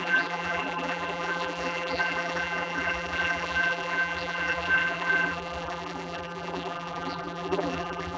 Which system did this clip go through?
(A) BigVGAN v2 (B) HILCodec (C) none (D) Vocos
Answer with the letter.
A